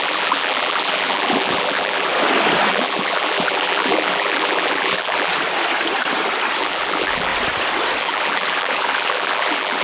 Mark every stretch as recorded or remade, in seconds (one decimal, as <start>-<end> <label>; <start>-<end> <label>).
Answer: 0.0-2.1 remade; 2.1-2.7 recorded; 2.7-5.3 remade; 5.3-6.6 recorded; 6.6-7.3 remade; 7.3-8.0 recorded; 8.0-9.8 remade